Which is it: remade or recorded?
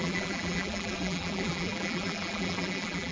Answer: remade